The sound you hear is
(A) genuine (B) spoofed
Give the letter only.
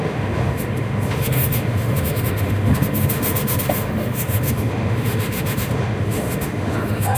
B